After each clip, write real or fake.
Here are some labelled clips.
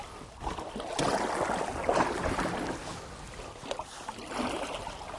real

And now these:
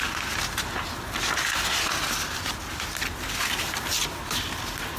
real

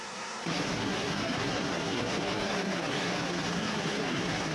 fake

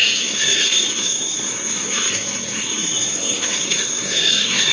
fake